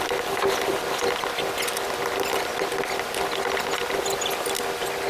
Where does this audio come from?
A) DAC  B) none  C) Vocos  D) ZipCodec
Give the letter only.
B